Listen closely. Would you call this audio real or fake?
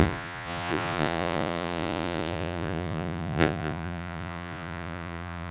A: fake